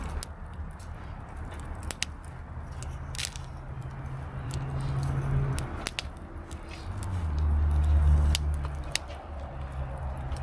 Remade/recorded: recorded